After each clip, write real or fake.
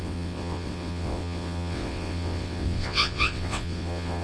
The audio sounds fake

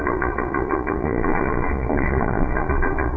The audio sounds fake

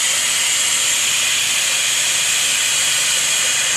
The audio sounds real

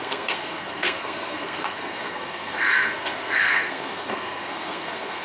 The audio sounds fake